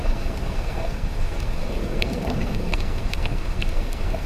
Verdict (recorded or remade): remade